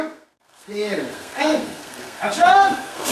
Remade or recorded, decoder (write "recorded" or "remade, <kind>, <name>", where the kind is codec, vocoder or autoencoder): remade, codec, SNAC